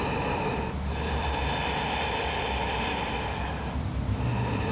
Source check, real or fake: real